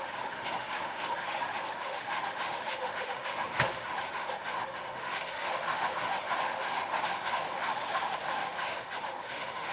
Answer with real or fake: fake